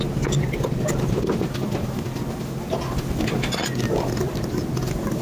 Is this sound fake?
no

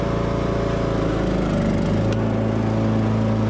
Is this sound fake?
no